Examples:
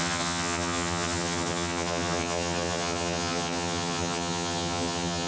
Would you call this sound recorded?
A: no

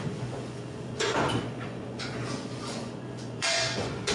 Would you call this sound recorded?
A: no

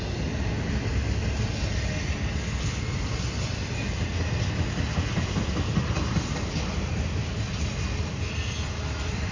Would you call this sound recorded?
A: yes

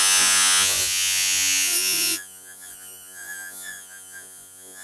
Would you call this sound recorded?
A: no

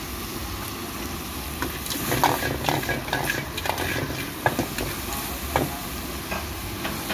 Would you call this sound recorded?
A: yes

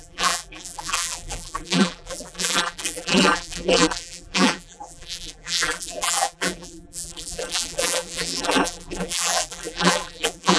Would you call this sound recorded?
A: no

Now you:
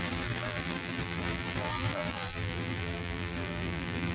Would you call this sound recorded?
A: no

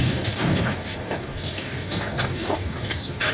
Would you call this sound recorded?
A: no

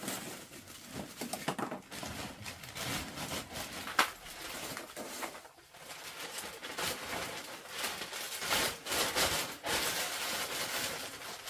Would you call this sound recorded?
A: yes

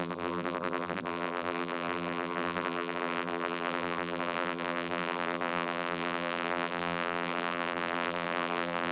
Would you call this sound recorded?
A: no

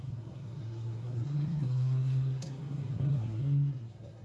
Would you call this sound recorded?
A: no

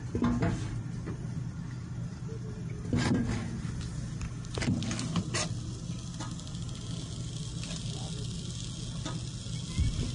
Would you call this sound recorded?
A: yes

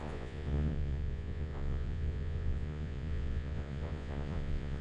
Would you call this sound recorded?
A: no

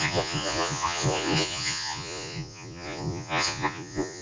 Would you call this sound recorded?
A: no